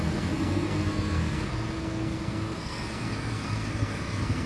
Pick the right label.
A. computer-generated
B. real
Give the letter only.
A